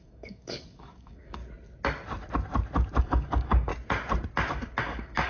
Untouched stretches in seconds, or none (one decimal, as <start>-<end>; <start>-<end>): 1.4-3.0; 3.7-4.8